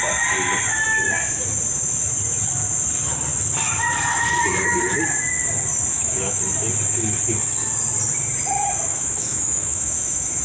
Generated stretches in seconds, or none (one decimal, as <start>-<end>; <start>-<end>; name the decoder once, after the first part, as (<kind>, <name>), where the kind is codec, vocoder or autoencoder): 5.9-6.4 (autoencoder, DAC-VAE); 8.9-10.4